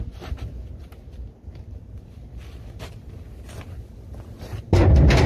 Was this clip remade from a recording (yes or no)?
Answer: no